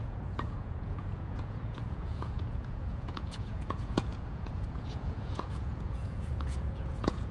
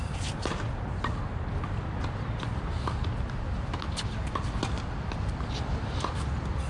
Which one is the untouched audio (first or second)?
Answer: second